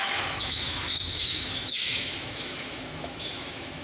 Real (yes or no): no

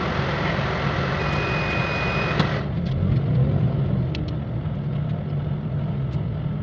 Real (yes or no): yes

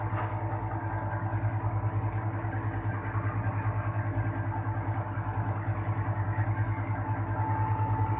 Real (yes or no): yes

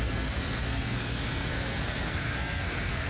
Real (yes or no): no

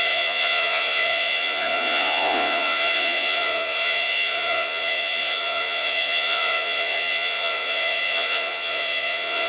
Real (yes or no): no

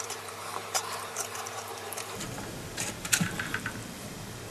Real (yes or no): no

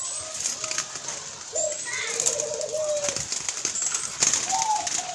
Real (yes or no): yes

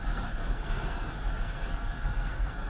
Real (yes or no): no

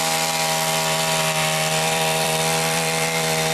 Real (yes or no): no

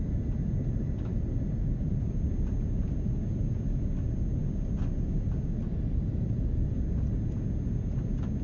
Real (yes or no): yes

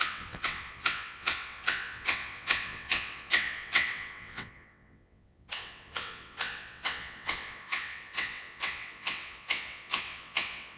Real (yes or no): no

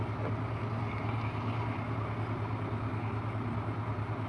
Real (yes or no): yes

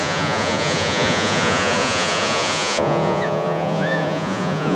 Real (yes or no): no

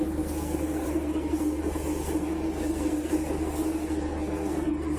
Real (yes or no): no